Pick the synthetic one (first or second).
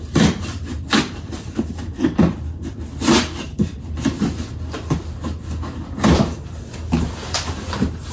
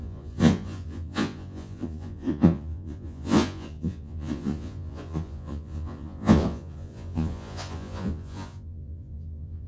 second